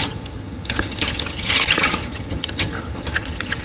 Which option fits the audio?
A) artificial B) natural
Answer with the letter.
A